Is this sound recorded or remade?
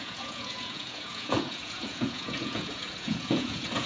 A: remade